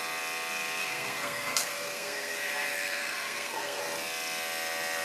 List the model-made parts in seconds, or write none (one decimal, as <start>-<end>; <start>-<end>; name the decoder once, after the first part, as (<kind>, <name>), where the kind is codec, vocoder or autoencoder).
0.8-3.8 (codec, SNAC)